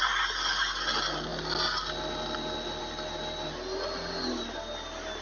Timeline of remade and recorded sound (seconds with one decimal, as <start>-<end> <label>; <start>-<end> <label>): 0.0-5.2 recorded